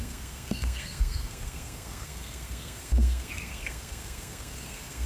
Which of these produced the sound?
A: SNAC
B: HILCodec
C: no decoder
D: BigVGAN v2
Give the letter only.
A